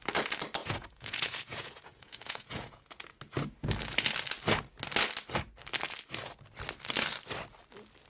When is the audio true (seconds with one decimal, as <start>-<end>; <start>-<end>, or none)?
0.0-0.6; 3.0-8.1